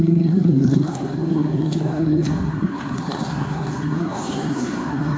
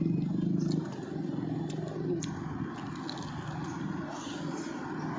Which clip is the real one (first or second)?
second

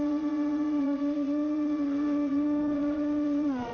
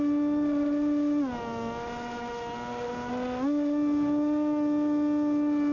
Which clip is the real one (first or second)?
second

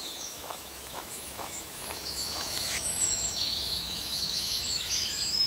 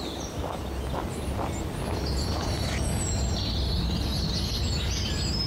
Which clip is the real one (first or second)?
second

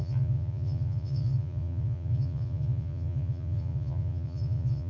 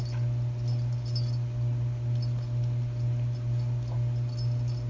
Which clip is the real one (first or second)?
second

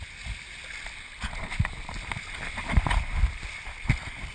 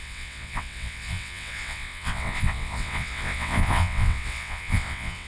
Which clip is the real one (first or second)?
first